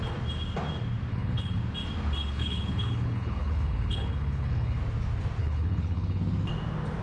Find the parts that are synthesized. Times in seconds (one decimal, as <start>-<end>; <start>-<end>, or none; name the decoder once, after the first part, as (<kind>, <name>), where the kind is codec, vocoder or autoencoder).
1.1-1.6 (codec, HILCodec); 2.2-4.8; 5.4-6.2